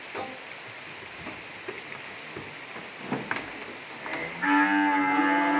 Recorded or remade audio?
recorded